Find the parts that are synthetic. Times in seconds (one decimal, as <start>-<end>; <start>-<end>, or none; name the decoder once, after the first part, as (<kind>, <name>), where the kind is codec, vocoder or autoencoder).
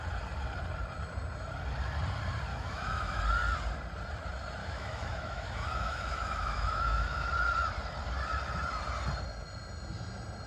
2.5-3.2 (autoencoder, DAC-VAE); 4.6-7.3